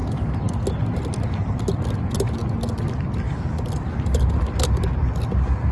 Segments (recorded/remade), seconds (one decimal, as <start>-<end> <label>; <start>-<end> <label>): 0.0-5.7 recorded